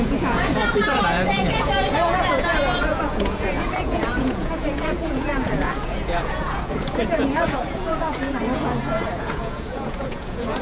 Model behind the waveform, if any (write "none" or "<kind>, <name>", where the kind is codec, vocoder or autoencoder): vocoder, Vocos